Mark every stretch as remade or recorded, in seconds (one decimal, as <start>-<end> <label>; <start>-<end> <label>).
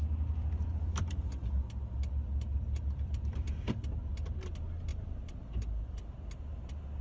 0.0-2.5 recorded; 2.5-3.8 remade; 3.8-4.9 recorded; 4.9-5.9 remade; 5.9-7.0 recorded